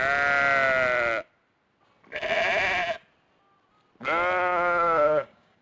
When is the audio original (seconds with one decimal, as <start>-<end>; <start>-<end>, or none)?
0.0-4.5